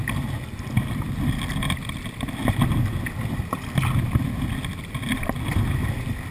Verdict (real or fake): real